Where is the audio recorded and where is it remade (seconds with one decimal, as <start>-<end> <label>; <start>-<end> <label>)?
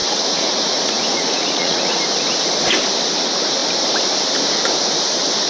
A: 0.0-2.0 remade; 2.0-5.5 recorded